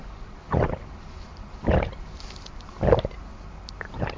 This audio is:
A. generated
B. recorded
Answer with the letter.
B